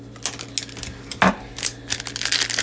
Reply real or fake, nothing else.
real